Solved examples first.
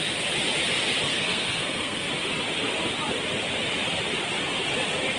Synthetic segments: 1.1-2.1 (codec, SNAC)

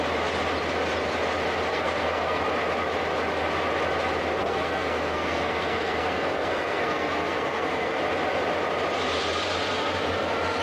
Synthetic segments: 1.7-2.4 (codec, SNAC); 4.4-8.0